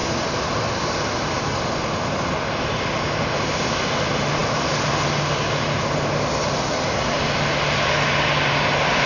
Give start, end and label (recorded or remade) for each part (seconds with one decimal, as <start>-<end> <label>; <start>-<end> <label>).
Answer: 0.0-9.1 recorded